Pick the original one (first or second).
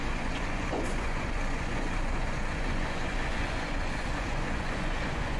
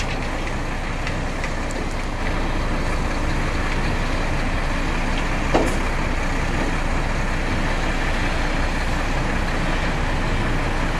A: second